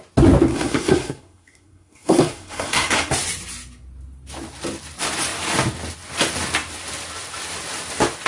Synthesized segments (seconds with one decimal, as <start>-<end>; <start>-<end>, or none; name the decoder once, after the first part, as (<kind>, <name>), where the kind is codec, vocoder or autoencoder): 0.5-3.1 (codec, SNAC)